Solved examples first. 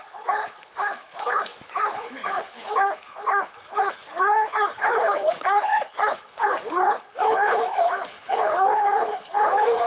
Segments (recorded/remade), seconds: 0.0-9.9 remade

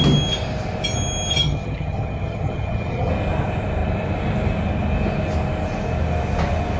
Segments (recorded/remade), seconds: 0.0-1.4 recorded; 1.4-3.1 remade; 3.1-6.8 recorded

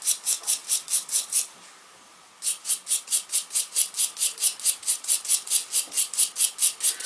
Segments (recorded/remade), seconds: 0.0-0.6 recorded; 0.6-2.3 remade; 2.3-5.6 recorded; 5.6-6.3 remade; 6.3-7.1 recorded

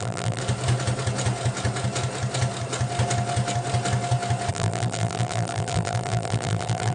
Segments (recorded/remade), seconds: 0.0-0.4 remade; 0.4-4.5 recorded; 4.5-6.9 remade

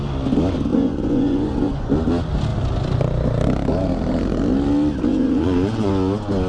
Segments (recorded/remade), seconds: 0.0-0.7 recorded; 0.7-1.9 remade; 1.9-5.1 recorded; 5.1-5.9 remade; 5.9-6.5 recorded

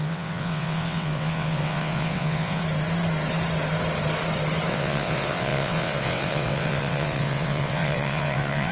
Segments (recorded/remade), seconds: 0.0-2.6 remade; 2.6-4.7 recorded; 4.7-8.7 remade

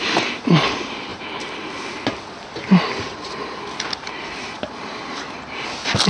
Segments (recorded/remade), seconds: 0.0-6.1 recorded

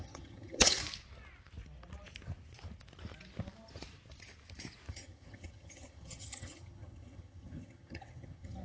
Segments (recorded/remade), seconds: 0.0-0.8 remade; 0.8-4.9 recorded; 4.9-8.6 remade